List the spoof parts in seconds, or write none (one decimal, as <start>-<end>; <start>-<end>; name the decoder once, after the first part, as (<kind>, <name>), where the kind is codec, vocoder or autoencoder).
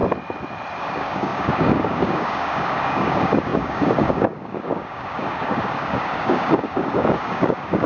0.8-7.9 (codec, DAC)